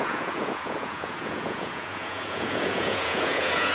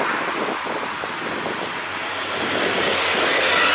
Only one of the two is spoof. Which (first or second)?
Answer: first